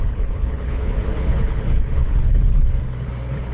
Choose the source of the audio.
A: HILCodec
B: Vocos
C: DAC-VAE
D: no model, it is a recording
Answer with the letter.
A